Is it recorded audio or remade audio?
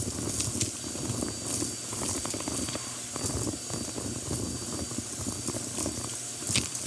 recorded